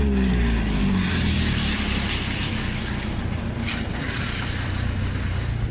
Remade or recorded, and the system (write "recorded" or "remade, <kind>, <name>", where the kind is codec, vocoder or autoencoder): recorded